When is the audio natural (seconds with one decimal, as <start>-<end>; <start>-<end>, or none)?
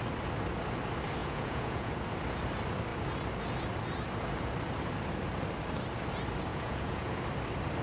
0.0-1.2; 1.9-6.5; 7.2-7.8